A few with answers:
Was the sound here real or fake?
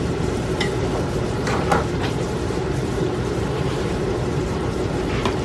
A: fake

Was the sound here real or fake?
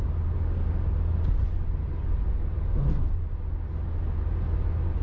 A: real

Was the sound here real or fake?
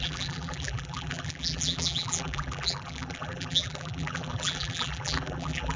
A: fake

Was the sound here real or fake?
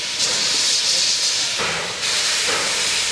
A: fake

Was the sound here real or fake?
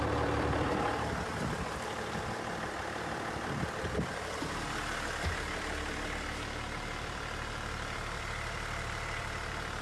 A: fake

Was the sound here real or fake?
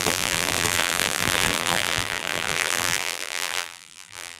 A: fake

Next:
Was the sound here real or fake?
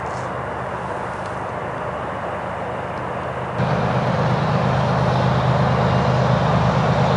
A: real